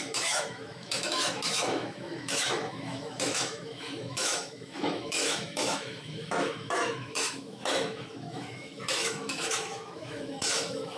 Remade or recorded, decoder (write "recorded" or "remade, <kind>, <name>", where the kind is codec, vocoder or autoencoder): remade, autoencoder, DAC-VAE